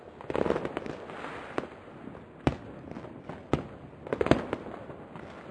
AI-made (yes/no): no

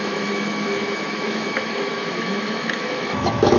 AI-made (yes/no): yes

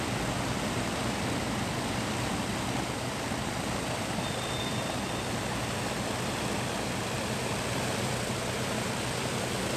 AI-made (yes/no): no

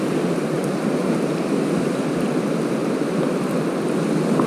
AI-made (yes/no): no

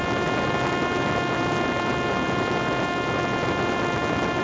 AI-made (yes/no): no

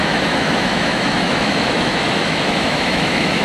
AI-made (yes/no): yes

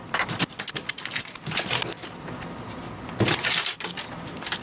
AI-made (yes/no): no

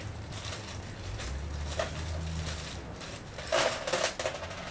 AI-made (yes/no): no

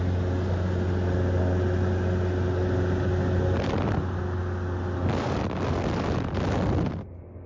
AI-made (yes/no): no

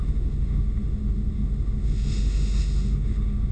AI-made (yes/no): yes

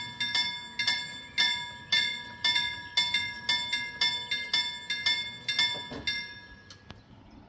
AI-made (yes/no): no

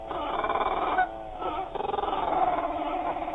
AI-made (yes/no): yes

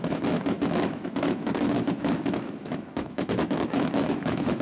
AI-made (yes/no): yes